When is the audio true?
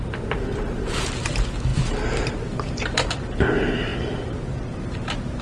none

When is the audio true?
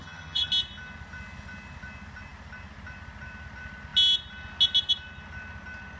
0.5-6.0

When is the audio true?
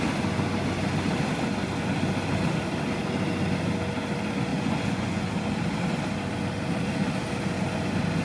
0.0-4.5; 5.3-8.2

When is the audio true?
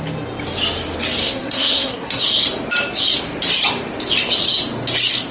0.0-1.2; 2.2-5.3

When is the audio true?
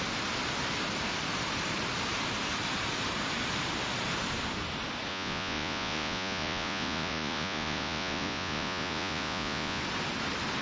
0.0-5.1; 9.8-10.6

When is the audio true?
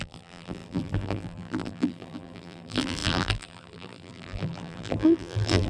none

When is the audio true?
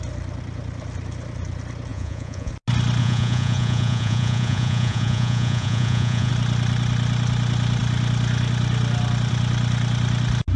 0.0-1.9; 2.5-3.0; 6.3-10.6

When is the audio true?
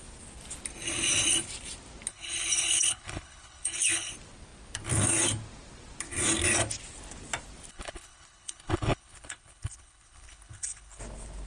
0.0-2.1; 4.1-7.7; 11.0-11.5